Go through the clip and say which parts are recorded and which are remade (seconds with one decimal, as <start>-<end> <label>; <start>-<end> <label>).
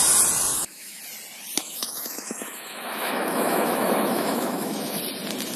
0.0-0.5 recorded; 0.5-1.0 remade; 1.0-1.6 recorded; 1.6-5.0 remade; 5.0-5.6 recorded